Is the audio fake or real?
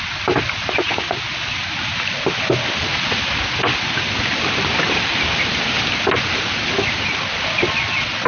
real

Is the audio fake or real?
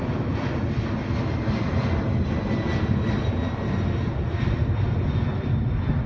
real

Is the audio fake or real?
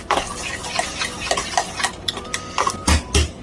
real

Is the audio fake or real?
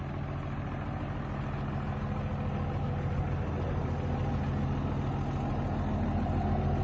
real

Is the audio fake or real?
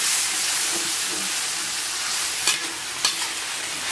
real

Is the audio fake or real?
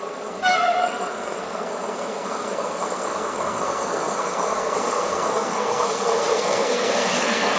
fake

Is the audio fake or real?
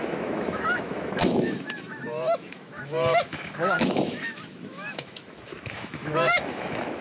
fake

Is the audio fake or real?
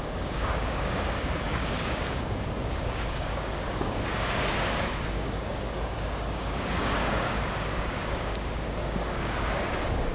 fake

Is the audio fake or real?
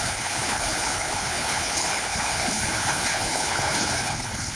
fake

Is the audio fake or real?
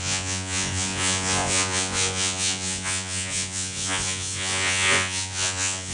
fake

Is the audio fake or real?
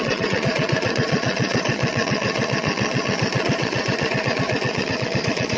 fake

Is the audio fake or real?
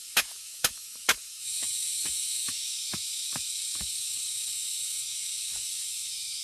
fake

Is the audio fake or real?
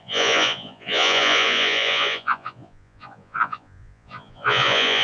fake